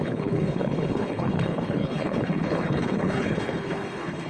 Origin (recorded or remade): remade